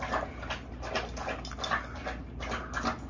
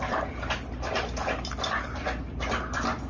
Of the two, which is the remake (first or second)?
second